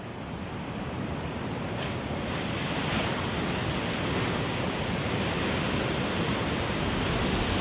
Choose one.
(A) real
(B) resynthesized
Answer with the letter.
A